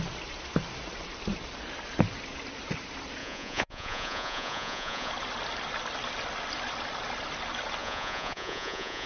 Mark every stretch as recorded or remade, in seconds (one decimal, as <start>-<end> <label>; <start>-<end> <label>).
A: 0.0-3.2 recorded; 3.2-5.1 remade; 5.1-7.8 recorded; 7.8-9.1 remade

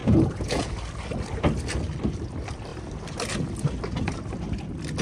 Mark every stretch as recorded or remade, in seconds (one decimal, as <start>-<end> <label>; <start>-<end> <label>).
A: 0.0-0.7 remade; 0.7-5.0 recorded

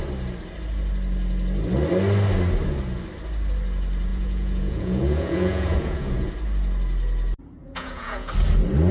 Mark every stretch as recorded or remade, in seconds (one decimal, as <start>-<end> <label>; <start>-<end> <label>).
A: 0.0-4.1 recorded; 4.1-6.3 remade; 6.3-7.6 recorded; 7.6-8.3 remade; 8.3-8.9 recorded

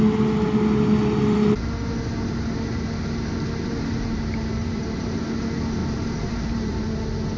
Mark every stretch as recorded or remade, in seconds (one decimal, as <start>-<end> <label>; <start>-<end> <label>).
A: 0.0-4.6 recorded; 4.6-5.2 remade; 5.2-5.8 recorded; 5.8-6.8 remade; 6.8-7.4 recorded

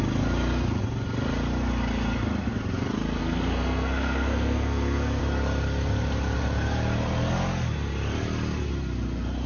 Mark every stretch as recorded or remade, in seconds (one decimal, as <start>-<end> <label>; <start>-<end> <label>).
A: 0.0-3.2 recorded; 3.2-5.2 remade; 5.2-9.5 recorded

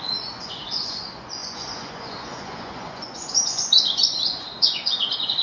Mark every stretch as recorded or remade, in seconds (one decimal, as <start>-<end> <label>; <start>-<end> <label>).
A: 0.0-5.4 remade

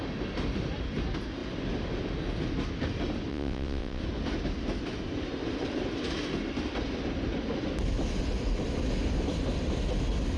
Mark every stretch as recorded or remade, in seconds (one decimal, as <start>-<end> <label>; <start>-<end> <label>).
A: 0.0-3.3 recorded; 3.3-4.0 remade; 4.0-10.4 recorded